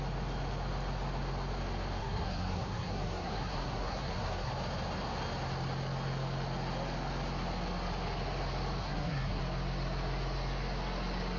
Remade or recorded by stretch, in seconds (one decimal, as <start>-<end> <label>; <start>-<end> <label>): 0.0-2.0 recorded; 2.0-4.5 remade; 4.5-8.8 recorded; 8.8-9.4 remade; 9.4-11.4 recorded